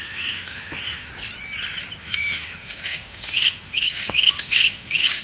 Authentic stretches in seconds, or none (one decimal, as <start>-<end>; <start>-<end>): 1.1-2.0